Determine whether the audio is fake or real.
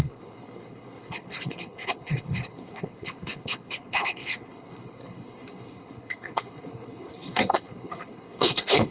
fake